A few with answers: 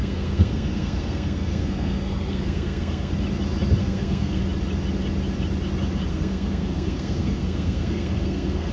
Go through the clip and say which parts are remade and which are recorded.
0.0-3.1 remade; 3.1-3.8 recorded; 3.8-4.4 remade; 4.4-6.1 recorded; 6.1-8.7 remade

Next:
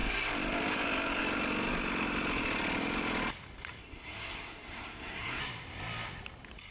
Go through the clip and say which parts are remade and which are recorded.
0.0-3.8 recorded; 3.8-5.4 remade; 5.4-6.7 recorded

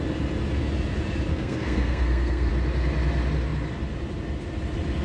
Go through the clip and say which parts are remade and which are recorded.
0.0-1.3 recorded; 1.3-2.5 remade; 2.5-5.0 recorded

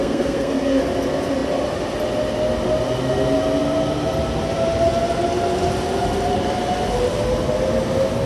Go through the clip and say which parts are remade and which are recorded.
0.0-0.8 remade; 0.8-8.3 recorded